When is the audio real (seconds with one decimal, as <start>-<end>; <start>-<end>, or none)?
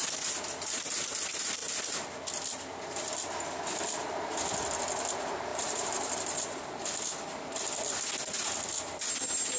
0.0-5.5; 6.7-9.6